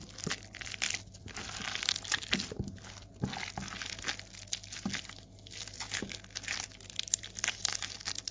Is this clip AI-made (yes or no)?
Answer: no